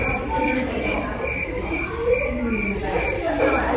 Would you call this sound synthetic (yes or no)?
yes